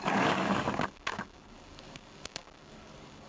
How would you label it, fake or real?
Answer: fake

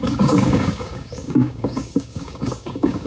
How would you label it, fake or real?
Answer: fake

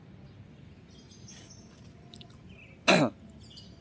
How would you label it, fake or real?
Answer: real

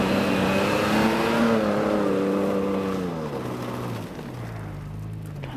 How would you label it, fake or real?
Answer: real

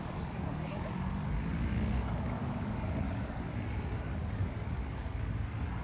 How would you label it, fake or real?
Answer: fake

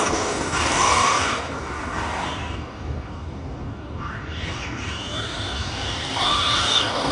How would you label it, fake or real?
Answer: fake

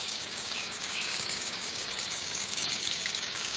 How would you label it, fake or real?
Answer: fake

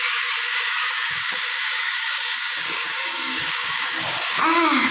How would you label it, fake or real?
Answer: fake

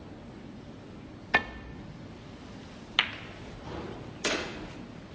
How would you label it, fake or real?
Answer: real